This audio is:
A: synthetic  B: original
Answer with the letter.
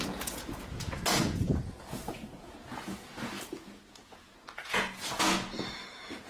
A